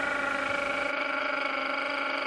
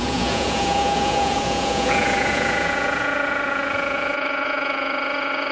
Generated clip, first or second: second